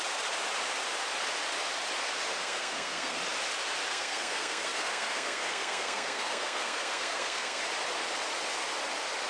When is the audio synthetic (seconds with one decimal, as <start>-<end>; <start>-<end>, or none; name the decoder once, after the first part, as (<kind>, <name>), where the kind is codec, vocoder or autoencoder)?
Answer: 2.4-3.2 (codec, SNAC); 3.9-7.6